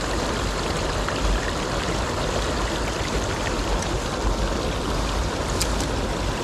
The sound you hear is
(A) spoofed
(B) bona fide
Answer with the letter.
B